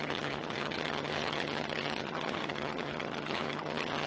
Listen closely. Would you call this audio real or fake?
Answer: fake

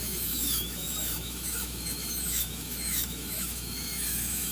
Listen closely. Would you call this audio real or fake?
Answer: fake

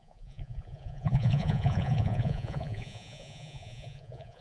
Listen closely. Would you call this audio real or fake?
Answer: fake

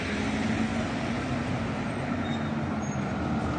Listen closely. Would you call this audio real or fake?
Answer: real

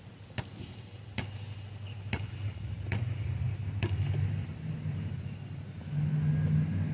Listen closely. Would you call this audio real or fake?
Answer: real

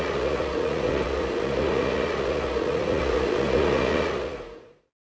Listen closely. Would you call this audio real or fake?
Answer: fake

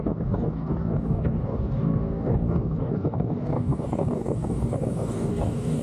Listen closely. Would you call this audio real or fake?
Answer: fake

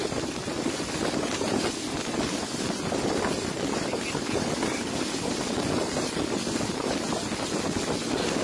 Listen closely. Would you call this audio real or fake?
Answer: real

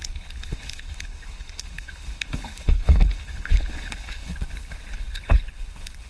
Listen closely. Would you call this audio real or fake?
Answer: fake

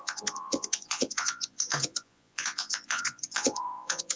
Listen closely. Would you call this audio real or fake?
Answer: fake